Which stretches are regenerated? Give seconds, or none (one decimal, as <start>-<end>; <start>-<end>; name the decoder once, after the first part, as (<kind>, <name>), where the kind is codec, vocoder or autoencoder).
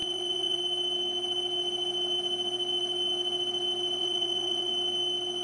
0.0-0.6 (vocoder, Vocos); 4.0-4.7